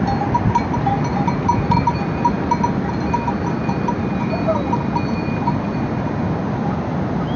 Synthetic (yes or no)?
no